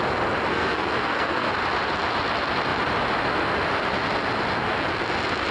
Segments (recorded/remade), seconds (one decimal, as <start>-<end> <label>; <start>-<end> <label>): 0.0-0.5 recorded; 0.5-1.5 remade; 1.5-5.5 recorded